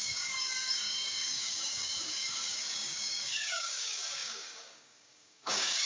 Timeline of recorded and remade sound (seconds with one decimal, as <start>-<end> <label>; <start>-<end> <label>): 0.0-5.9 remade